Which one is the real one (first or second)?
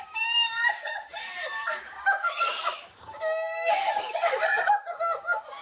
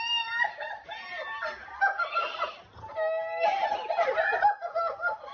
second